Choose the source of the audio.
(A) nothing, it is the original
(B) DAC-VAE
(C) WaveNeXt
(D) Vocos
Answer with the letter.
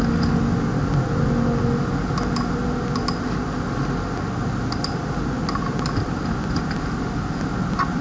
A